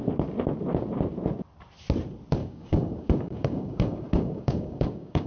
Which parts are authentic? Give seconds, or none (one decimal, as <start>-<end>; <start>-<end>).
0.0-2.4